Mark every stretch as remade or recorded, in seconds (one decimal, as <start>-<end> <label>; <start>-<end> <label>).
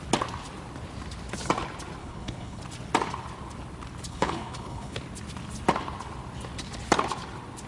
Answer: 0.0-2.0 recorded; 2.0-2.6 remade; 2.6-4.1 recorded; 4.1-5.0 remade; 5.0-7.7 recorded